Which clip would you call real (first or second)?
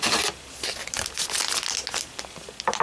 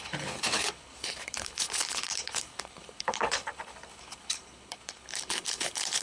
first